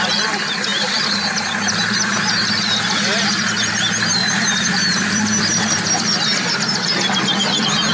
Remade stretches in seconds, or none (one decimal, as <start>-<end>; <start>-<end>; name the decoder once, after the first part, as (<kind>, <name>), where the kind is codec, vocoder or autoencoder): 4.2-7.9 (vocoder, BigVGAN v2)